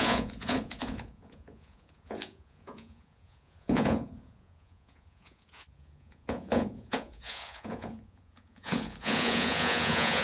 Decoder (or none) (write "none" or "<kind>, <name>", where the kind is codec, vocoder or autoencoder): vocoder, Vocos